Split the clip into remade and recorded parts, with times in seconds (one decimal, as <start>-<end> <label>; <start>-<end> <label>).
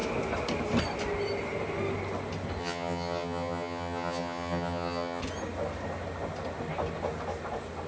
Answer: 0.0-2.6 recorded; 2.6-5.2 remade; 5.2-7.9 recorded